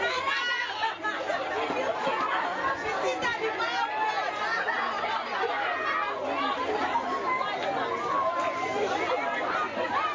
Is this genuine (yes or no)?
yes